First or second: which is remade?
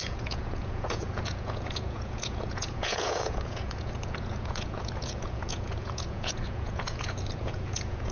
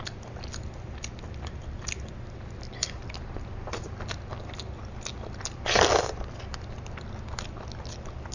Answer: first